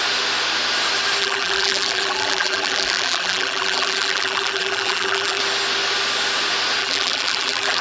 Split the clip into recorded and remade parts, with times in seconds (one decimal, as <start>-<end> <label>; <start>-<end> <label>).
0.0-1.2 recorded; 1.2-5.4 remade; 5.4-6.8 recorded; 6.8-7.8 remade